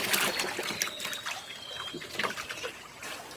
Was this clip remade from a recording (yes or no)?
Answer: no